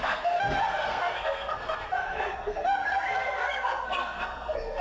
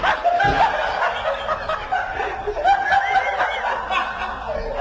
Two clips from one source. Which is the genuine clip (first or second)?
second